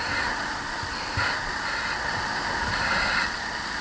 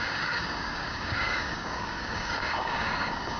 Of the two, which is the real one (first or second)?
first